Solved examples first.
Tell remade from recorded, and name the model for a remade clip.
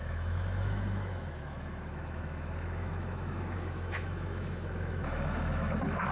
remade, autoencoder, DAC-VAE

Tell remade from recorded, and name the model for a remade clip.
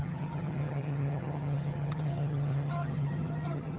remade, vocoder, HiFi-GAN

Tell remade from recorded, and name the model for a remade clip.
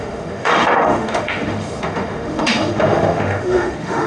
remade, autoencoder, DAC-VAE